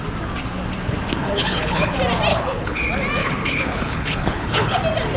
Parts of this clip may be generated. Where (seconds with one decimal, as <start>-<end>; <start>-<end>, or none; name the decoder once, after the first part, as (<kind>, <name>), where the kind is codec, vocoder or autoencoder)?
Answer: 1.2-1.9 (codec, HILCodec); 2.3-2.8; 3.2-4.8